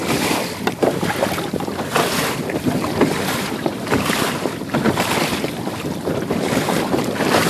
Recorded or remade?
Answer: remade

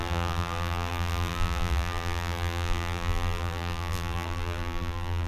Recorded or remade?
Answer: remade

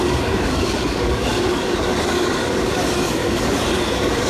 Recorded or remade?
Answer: remade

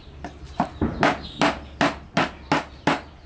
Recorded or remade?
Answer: recorded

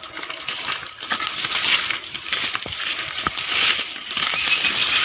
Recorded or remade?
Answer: recorded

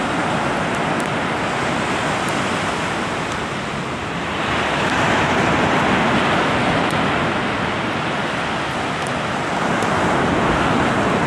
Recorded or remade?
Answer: recorded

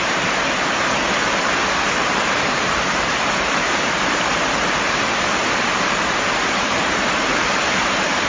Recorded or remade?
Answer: remade